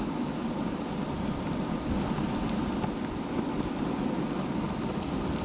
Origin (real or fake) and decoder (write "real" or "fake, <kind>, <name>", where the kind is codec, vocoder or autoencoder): real